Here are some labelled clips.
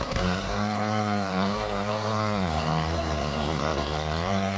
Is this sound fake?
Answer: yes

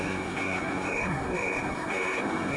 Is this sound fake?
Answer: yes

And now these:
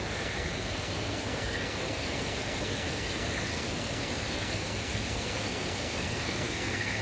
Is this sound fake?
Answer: yes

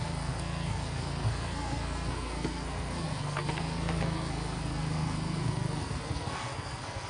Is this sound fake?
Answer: yes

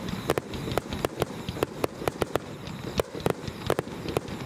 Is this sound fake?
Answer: no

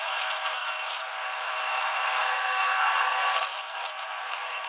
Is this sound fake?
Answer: yes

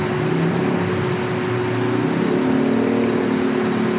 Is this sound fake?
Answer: no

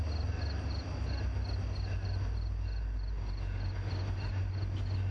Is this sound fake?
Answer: no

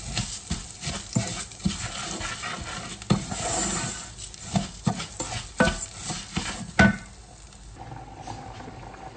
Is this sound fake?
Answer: no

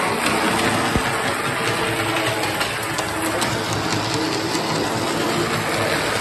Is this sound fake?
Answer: no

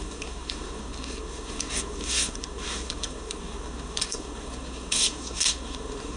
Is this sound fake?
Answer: yes